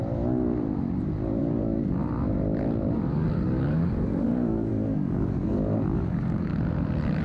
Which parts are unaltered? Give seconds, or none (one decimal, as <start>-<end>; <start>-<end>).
0.0-1.4; 2.0-3.0; 6.5-7.2